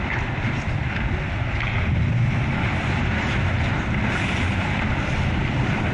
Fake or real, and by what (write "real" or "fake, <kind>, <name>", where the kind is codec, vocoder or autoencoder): real